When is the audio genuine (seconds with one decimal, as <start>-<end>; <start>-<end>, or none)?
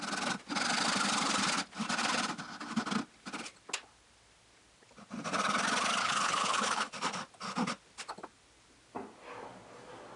0.0-6.0; 6.9-10.2